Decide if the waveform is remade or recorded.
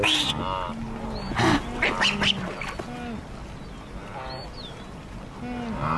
recorded